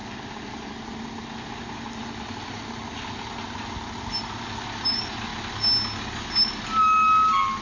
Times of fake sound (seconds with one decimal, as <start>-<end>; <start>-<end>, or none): none